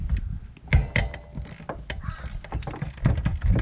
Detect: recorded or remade recorded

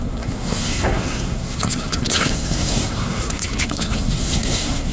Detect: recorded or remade remade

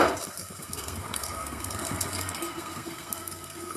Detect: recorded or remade remade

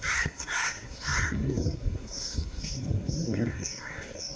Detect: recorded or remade remade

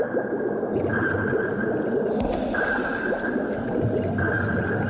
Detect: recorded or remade recorded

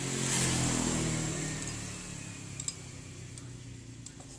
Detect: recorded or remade recorded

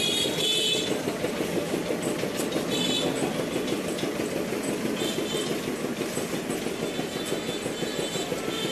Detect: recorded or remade recorded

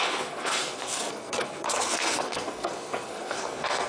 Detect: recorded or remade remade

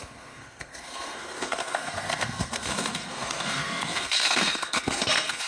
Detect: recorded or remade remade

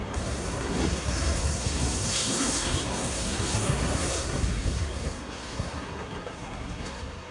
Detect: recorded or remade remade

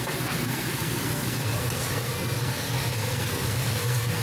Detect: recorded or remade remade